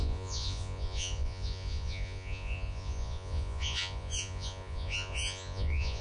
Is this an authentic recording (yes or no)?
no